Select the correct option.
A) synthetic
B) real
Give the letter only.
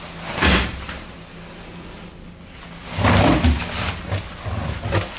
B